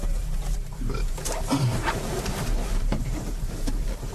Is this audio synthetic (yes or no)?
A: yes